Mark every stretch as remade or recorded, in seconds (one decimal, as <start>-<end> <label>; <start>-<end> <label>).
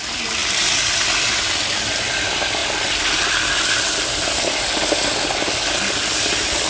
0.0-6.7 recorded